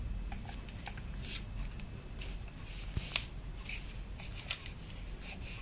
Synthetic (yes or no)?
no